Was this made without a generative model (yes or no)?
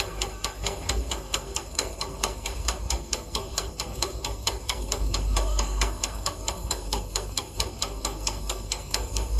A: no